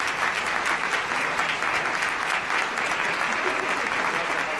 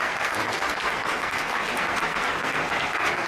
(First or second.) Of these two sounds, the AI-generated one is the second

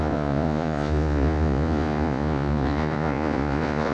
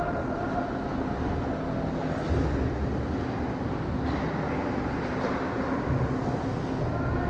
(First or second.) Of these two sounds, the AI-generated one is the first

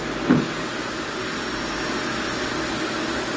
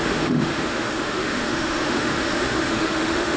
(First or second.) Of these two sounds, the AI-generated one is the second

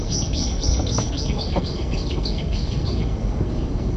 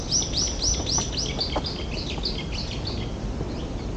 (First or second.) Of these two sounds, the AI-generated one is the first